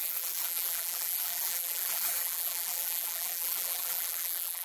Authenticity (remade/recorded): remade